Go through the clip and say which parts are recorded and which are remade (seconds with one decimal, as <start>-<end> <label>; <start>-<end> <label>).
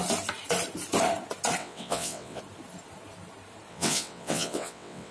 0.0-1.6 recorded; 1.6-2.4 remade; 2.4-3.7 recorded; 3.7-5.1 remade